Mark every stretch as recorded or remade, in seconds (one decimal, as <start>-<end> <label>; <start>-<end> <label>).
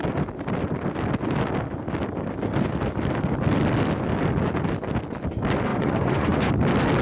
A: 0.0-5.7 recorded; 5.7-6.5 remade; 6.5-7.0 recorded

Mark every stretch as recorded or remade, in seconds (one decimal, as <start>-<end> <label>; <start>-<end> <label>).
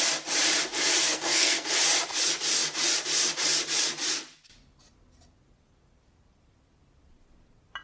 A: 0.0-1.0 recorded; 1.0-1.7 remade; 1.7-7.8 recorded